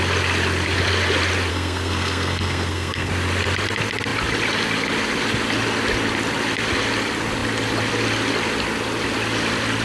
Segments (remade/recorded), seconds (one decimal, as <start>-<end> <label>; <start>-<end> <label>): 0.0-1.5 recorded; 1.5-3.1 remade; 3.1-9.8 recorded